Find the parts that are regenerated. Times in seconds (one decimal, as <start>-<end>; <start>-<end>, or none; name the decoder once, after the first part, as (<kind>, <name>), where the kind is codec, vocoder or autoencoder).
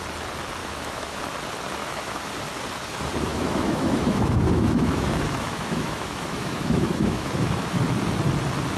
0.6-1.2 (autoencoder, DAC-VAE); 1.8-2.3; 3.3-7.8